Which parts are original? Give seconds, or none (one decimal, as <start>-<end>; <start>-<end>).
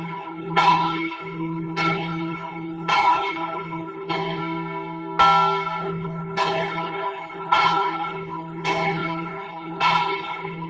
4.4-5.8